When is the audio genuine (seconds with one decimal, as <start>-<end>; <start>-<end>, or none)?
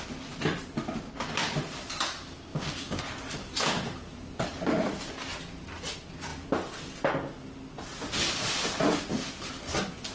0.0-2.5; 3.0-10.1